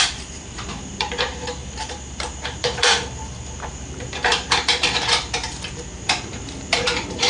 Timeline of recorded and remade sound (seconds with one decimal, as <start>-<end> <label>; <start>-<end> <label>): 0.0-7.3 remade